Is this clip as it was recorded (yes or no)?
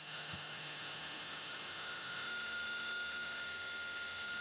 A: no